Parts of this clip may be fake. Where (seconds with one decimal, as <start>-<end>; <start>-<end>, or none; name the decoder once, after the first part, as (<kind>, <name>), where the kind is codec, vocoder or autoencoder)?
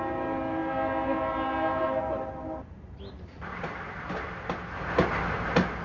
none